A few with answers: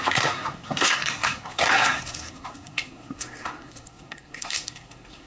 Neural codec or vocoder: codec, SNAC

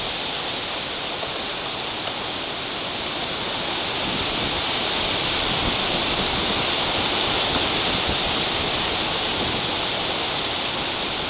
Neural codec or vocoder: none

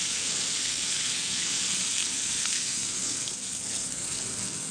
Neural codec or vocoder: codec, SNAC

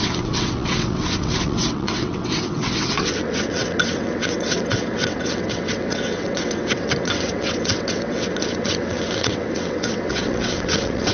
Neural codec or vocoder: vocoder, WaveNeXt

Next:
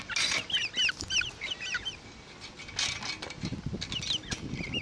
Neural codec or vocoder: none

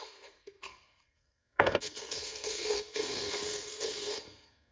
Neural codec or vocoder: codec, SNAC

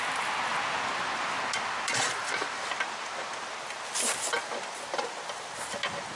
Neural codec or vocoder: none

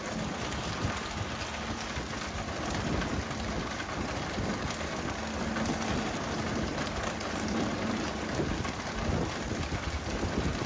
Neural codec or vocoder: none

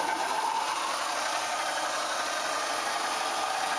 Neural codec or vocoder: none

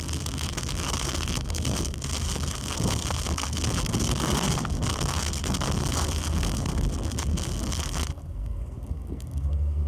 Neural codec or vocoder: codec, SNAC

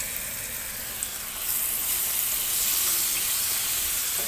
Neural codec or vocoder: none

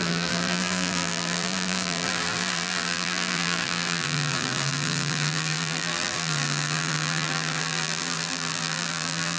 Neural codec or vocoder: vocoder, BigVGAN v2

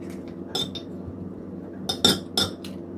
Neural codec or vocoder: none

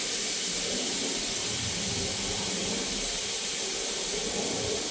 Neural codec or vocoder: none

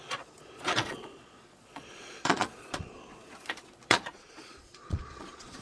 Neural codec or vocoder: vocoder, Vocos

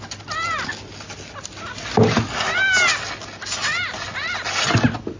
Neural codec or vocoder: none